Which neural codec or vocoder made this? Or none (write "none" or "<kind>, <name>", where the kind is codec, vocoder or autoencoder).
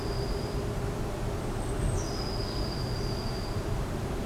none